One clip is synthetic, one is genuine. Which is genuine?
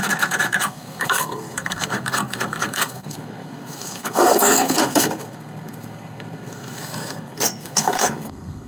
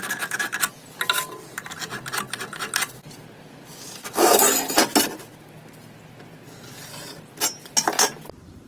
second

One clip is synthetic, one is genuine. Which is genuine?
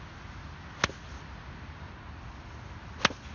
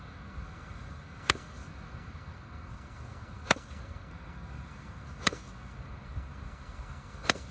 first